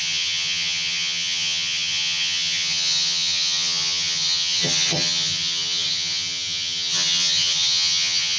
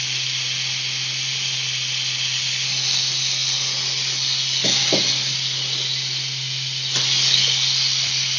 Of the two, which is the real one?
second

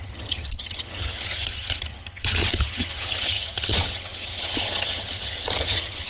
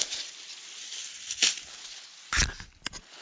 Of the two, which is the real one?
second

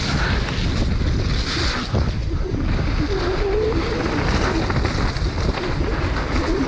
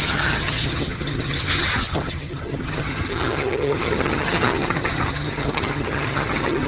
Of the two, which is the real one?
first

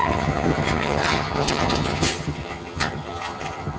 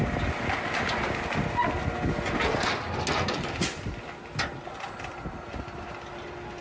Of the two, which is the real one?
second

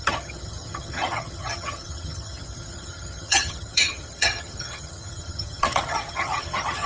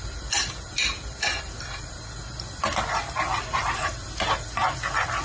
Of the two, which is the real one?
second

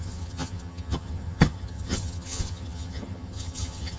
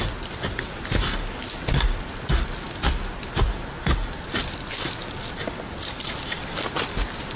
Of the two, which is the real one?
second